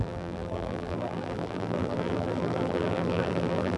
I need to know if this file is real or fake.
fake